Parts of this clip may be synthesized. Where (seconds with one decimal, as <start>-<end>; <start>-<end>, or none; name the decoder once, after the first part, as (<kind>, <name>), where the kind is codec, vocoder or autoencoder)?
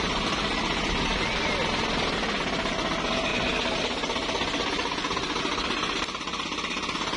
none